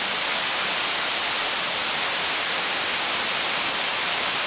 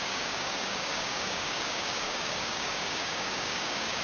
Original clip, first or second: first